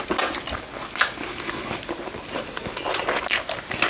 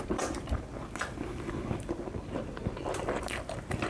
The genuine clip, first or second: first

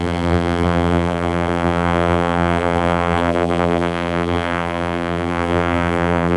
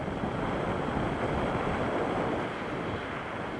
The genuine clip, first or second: second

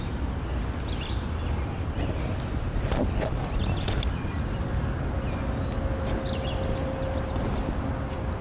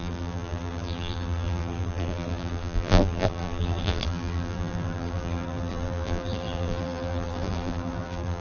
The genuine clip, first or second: first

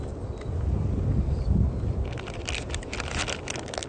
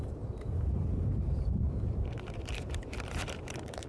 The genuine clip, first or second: first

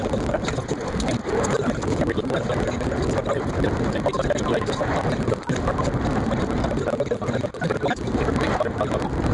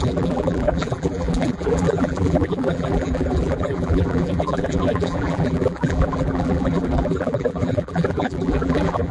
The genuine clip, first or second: first